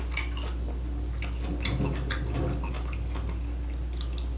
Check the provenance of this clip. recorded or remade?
recorded